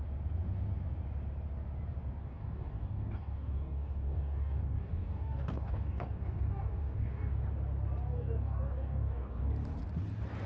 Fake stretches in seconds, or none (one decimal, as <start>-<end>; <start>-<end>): 2.2-7.4; 8.1-9.5